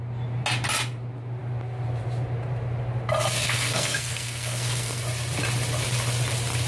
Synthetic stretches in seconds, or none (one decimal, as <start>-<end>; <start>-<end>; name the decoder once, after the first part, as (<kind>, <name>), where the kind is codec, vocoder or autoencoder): 3.4-5.0 (codec, SNAC)